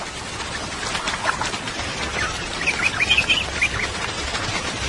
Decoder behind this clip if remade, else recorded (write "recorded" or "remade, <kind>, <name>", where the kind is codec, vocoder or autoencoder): recorded